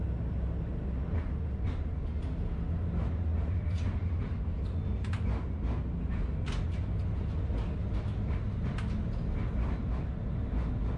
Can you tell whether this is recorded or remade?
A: recorded